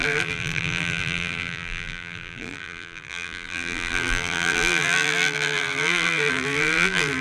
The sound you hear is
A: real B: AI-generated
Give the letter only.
B